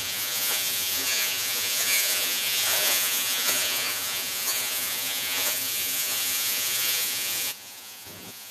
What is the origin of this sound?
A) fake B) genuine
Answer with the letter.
A